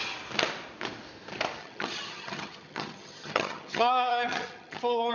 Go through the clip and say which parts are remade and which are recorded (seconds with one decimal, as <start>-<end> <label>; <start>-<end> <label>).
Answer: 0.0-1.6 recorded; 1.6-5.1 remade